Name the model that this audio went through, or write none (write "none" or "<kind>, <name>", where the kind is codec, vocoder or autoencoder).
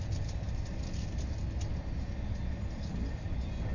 none